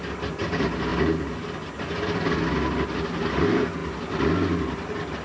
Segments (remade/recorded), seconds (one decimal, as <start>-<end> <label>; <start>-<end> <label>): 0.0-5.2 recorded